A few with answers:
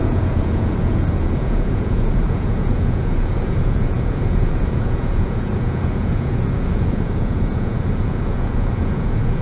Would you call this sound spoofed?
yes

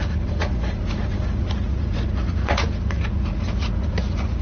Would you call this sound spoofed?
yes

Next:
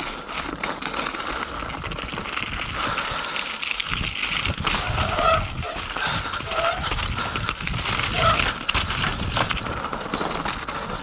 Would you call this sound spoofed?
no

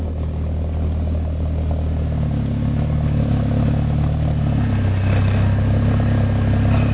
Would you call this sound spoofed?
no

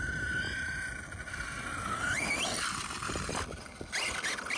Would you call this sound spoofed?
no